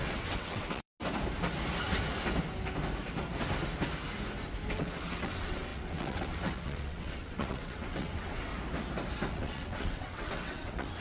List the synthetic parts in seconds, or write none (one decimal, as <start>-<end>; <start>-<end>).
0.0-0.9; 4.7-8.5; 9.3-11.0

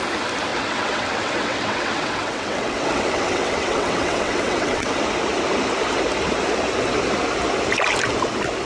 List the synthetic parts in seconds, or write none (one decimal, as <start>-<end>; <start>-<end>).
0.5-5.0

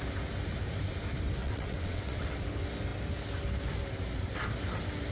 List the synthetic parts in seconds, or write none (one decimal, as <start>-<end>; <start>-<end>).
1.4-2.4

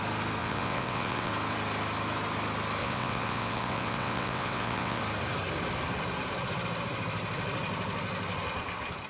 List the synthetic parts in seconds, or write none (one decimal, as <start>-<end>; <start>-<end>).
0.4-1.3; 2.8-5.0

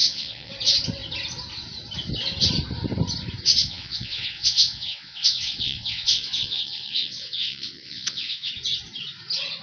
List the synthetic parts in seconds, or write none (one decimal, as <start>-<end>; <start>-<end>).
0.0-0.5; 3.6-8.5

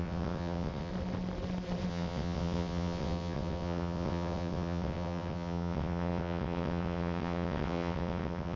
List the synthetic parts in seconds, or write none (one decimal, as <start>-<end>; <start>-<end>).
0.0-0.9; 1.9-8.6

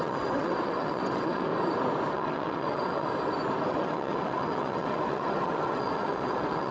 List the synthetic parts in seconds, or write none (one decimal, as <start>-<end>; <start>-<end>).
0.0-1.5; 2.1-3.1; 3.7-6.7